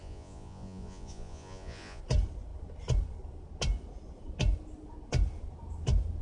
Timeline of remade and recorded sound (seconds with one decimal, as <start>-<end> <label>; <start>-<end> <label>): 0.0-2.0 remade; 2.0-6.2 recorded